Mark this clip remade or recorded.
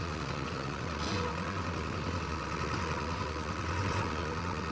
remade